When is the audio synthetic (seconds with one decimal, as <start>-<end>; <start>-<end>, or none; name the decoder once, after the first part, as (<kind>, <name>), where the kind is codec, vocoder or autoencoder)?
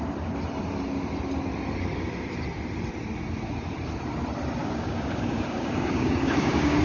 4.6-6.8 (codec, DAC)